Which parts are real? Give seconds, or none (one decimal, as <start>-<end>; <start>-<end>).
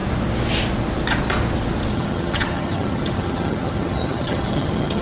0.0-1.9